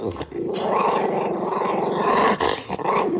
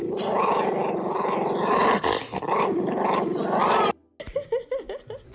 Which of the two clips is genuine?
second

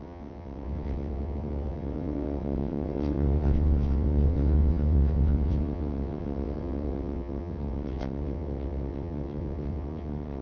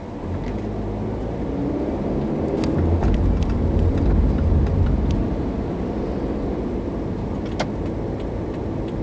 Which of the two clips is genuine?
second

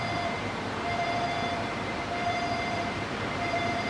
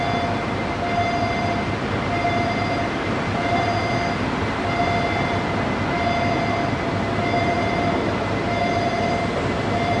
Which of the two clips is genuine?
second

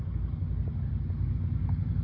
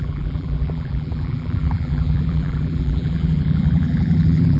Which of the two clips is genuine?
first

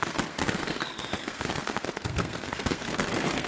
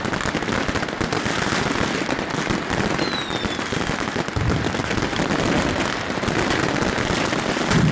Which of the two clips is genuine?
second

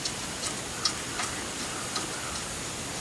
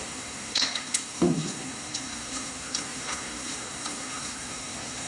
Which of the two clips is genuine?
first